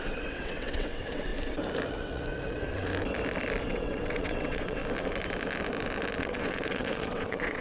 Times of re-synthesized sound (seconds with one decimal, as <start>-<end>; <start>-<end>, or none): 0.0-1.3; 1.9-2.9; 3.6-4.8; 6.2-7.6